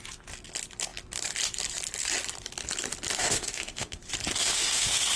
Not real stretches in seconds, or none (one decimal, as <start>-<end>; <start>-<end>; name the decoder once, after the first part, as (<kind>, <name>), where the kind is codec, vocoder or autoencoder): 3.2-4.0 (autoencoder, DAC-VAE); 4.4-5.2